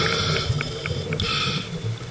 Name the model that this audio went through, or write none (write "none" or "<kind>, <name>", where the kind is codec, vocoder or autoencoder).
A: none